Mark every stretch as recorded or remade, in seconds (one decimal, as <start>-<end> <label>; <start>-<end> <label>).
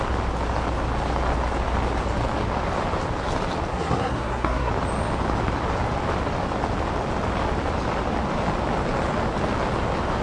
0.0-3.7 recorded; 3.7-4.7 remade; 4.7-10.2 recorded